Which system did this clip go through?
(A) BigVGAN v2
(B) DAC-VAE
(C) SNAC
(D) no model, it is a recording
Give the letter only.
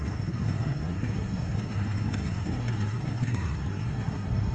C